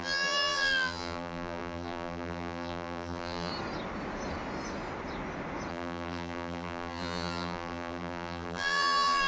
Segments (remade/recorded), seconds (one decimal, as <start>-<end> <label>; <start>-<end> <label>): 0.0-3.5 remade; 3.5-5.7 recorded; 5.7-9.3 remade